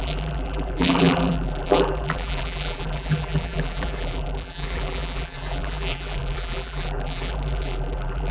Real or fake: fake